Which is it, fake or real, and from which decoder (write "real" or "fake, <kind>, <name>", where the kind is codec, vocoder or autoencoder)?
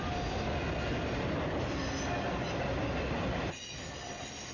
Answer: real